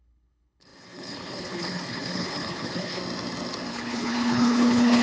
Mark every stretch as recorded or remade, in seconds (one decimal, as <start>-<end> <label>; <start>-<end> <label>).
0.0-3.0 remade; 3.0-3.7 recorded; 3.7-5.0 remade